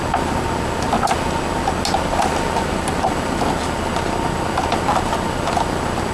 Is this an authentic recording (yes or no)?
yes